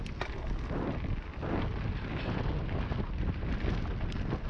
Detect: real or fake real